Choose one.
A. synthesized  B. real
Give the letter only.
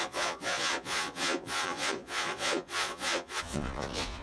A